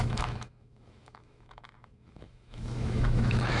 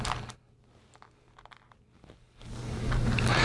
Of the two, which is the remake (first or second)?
first